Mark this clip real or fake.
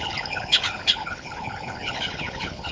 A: fake